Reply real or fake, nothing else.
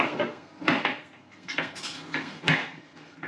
fake